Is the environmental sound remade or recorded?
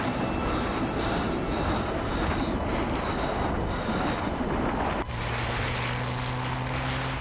recorded